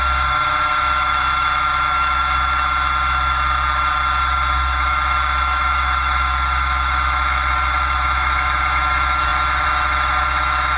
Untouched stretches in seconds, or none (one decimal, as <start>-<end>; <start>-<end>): none